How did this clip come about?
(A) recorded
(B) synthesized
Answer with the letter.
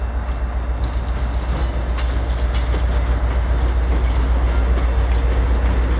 A